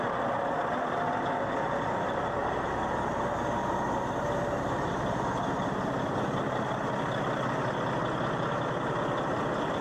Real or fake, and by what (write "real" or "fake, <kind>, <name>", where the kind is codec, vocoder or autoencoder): real